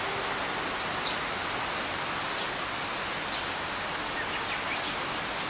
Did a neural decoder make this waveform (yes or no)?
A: no